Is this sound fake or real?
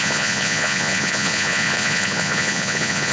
fake